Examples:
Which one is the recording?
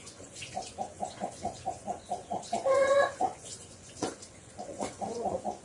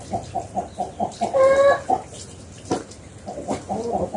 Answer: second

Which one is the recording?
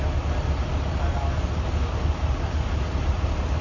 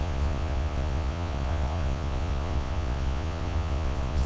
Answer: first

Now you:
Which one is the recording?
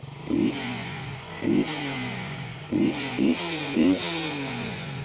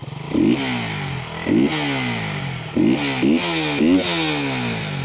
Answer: second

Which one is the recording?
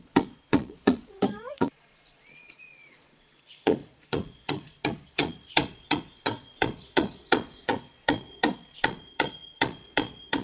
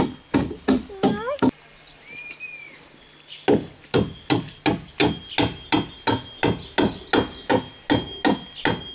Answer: second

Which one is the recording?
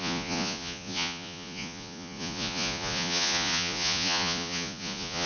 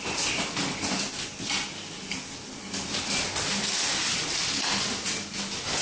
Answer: second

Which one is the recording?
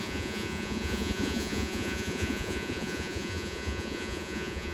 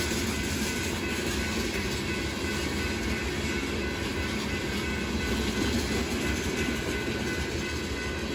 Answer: second